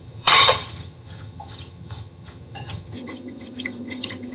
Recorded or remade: remade